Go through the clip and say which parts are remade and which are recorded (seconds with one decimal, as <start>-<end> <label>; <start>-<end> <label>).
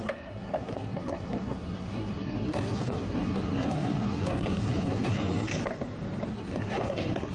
0.0-5.5 remade; 5.5-6.3 recorded; 6.3-7.3 remade